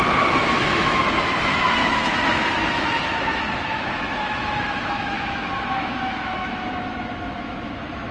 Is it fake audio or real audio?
fake